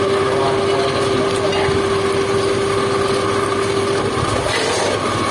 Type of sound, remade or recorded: recorded